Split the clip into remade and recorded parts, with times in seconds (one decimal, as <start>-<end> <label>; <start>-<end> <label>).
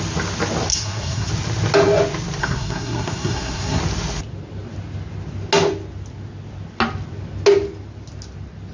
0.0-0.7 recorded; 0.7-1.3 remade; 1.3-2.4 recorded; 2.4-3.8 remade; 3.8-8.7 recorded